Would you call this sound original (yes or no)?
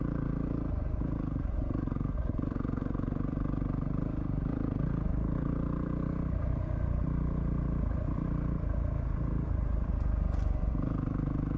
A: no